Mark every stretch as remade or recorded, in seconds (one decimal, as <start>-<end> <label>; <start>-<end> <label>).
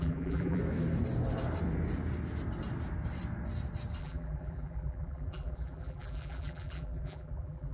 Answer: 0.0-0.6 remade; 0.6-4.0 recorded; 4.0-7.7 remade